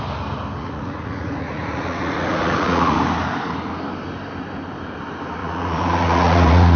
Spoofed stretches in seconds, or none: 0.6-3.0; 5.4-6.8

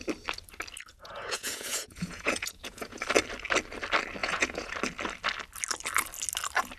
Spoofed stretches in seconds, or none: 0.9-3.0; 4.2-4.7

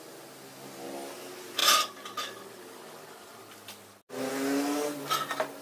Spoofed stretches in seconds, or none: none

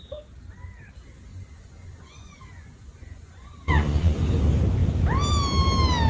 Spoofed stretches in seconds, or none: 1.3-4.2

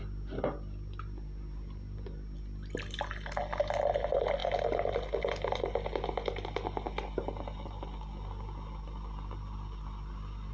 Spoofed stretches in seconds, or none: none

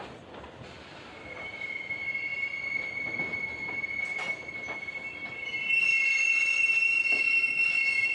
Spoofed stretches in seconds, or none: none

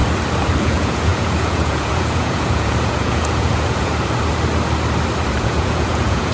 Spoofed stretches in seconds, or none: 0.6-3.9; 5.4-6.3